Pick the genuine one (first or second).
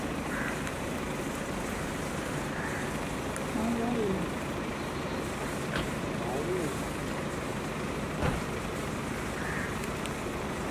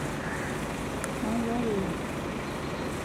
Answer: second